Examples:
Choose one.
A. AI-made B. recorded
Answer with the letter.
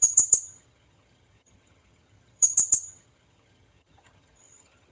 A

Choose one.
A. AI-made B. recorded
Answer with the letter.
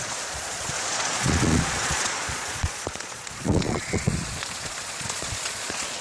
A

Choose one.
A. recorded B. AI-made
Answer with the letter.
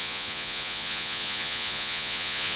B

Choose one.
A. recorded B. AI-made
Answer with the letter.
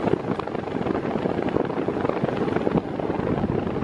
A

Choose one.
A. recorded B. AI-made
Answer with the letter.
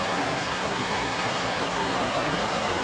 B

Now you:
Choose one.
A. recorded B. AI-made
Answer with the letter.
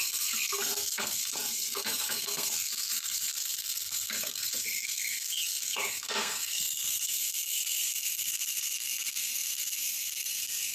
B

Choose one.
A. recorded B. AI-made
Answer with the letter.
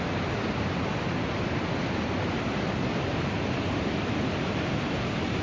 A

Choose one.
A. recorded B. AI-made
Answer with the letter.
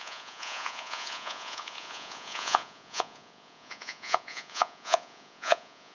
B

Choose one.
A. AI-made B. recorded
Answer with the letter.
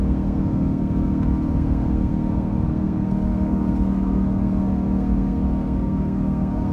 A